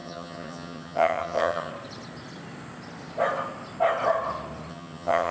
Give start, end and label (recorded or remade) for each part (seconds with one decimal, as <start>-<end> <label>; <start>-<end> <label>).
0.0-1.7 remade; 1.7-4.7 recorded; 4.7-5.3 remade

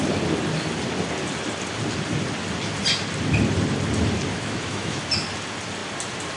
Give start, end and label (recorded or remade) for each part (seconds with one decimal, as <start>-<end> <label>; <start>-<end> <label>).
0.0-4.3 recorded; 4.3-5.0 remade; 5.0-6.4 recorded

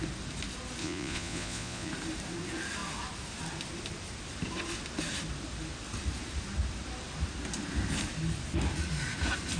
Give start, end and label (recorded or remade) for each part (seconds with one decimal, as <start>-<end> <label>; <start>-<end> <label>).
0.0-0.8 recorded; 0.8-1.9 remade; 1.9-9.6 recorded

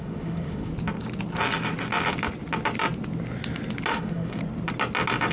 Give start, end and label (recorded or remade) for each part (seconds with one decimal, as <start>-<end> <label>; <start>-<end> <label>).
0.0-0.7 remade; 0.7-3.9 recorded; 3.9-4.4 remade; 4.4-5.3 recorded

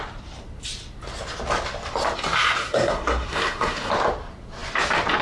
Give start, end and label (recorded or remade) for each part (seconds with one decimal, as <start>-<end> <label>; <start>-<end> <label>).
0.0-2.6 recorded; 2.6-3.9 remade; 3.9-5.2 recorded

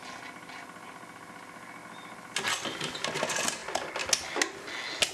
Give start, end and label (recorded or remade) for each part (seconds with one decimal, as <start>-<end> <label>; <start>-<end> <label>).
0.0-5.1 recorded

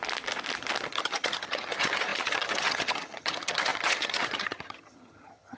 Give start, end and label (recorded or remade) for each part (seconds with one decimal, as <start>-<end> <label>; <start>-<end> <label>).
0.0-0.9 recorded; 0.9-5.6 remade

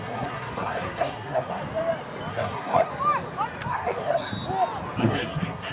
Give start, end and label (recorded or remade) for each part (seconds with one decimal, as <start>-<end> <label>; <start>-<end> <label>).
0.0-1.6 remade; 1.6-2.3 recorded; 2.3-2.9 remade; 2.9-3.7 recorded; 3.7-4.3 remade; 4.3-5.0 recorded; 5.0-5.7 remade